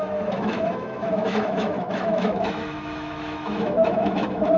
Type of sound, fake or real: fake